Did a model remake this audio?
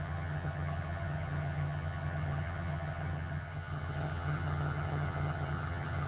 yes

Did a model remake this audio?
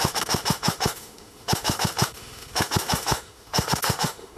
yes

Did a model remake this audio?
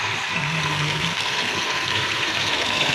yes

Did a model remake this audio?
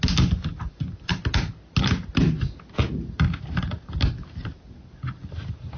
no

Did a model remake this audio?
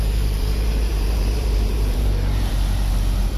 yes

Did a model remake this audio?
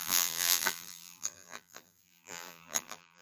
yes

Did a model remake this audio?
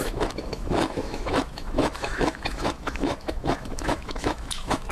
yes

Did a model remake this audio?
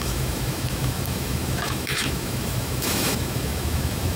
yes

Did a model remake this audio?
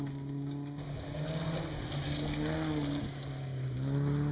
no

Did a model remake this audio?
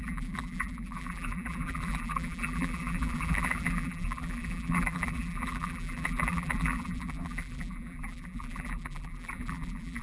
yes